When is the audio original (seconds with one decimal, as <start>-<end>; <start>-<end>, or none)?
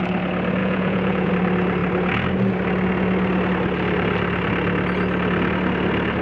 0.0-0.6; 1.3-6.2